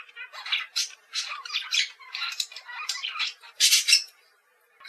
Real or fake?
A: fake